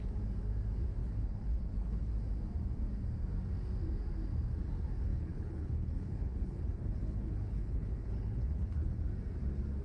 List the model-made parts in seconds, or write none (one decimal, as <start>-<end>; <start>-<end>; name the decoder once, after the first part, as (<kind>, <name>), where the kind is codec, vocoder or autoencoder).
1.0-2.1 (codec, HILCodec); 5.1-9.0